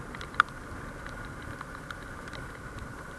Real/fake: real